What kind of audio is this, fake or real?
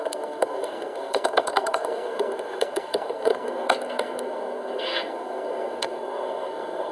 fake